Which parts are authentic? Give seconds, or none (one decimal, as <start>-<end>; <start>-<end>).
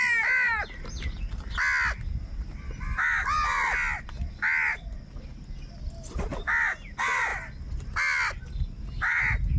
0.0-9.6